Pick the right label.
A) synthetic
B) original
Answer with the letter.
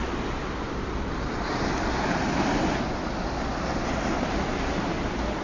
B